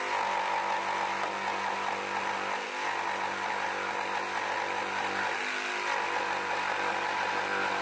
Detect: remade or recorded recorded